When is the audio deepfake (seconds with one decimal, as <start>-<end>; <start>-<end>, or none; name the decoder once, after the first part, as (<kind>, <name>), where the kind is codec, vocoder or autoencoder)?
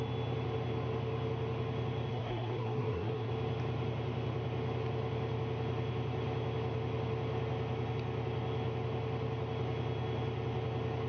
2.1-3.3 (codec, SNAC)